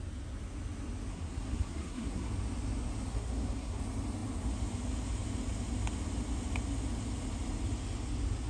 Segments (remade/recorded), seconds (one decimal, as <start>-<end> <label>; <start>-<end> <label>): 0.0-1.1 recorded; 1.1-2.3 remade; 2.3-3.1 recorded; 3.1-3.8 remade; 3.8-8.5 recorded